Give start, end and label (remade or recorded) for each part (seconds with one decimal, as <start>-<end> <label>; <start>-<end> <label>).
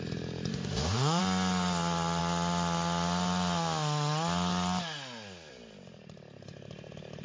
0.0-0.5 recorded; 0.5-1.2 remade; 1.2-7.2 recorded